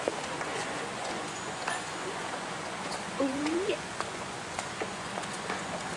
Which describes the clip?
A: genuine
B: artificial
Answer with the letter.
B